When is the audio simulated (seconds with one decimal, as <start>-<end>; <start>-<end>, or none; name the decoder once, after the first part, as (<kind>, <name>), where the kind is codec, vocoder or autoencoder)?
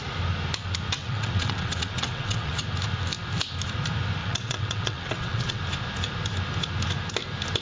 1.0-2.6 (vocoder, WaveNeXt); 4.2-5.6